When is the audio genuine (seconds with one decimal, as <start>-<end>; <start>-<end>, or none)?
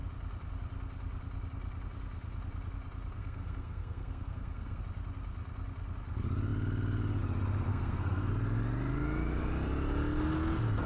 0.0-3.2; 4.8-7.7; 8.3-10.9